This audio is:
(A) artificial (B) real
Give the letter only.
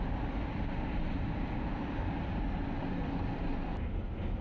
B